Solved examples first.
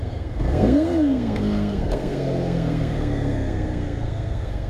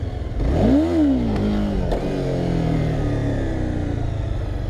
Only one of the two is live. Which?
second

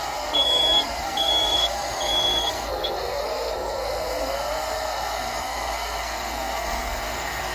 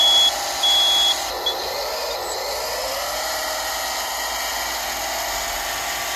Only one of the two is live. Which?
second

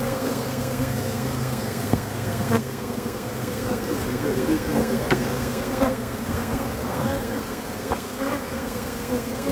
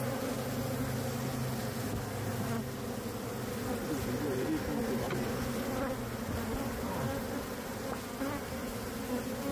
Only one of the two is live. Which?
second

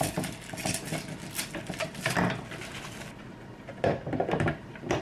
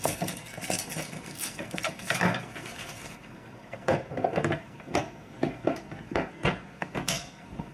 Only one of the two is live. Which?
first